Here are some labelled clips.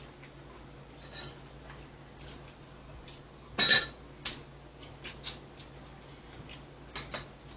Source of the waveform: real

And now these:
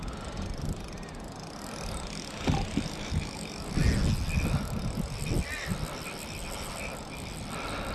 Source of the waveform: real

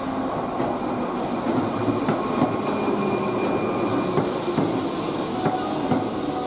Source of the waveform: real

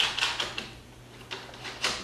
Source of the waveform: real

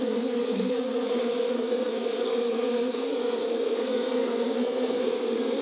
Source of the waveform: fake